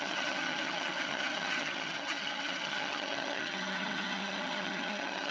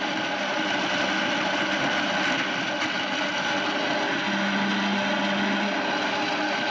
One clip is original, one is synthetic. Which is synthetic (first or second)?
first